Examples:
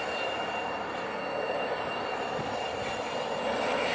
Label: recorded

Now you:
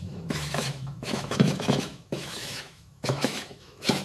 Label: remade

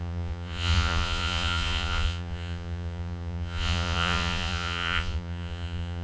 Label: remade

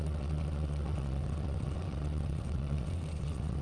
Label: remade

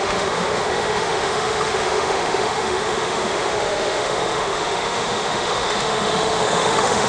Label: remade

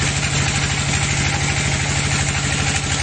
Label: recorded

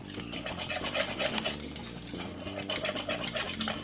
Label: recorded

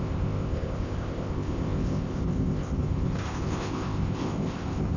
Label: remade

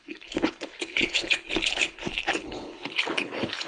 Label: remade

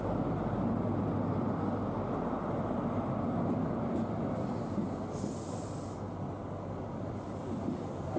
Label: recorded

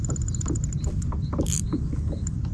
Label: recorded